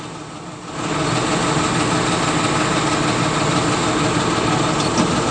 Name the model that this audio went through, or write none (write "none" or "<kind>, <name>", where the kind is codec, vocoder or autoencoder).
none